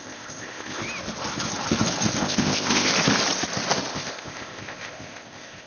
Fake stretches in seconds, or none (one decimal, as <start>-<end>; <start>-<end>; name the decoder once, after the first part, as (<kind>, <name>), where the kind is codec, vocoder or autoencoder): 0.0-0.8 (codec, ZipCodec); 2.2-2.9; 3.9-5.7